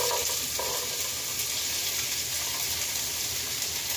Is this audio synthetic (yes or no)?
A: no